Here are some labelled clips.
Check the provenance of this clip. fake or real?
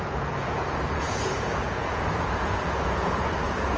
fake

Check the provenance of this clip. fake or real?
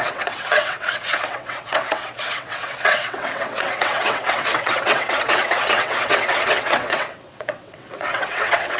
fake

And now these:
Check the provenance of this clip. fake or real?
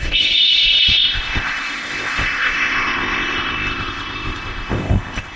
fake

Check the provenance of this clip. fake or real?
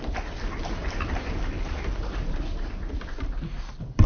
fake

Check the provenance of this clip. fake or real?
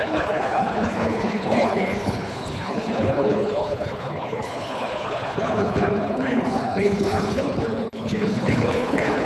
fake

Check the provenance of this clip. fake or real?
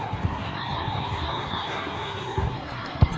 fake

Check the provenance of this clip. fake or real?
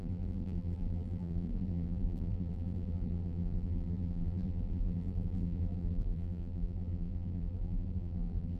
fake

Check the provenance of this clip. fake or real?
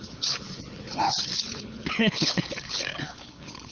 fake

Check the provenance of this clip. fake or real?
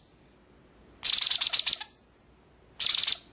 real